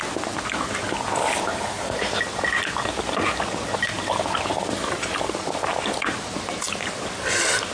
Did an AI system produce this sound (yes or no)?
no